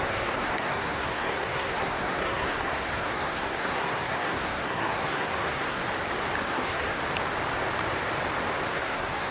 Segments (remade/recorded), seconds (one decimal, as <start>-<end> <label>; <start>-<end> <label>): 0.0-5.8 remade; 5.8-6.4 recorded; 6.4-7.0 remade; 7.0-8.7 recorded; 8.7-9.3 remade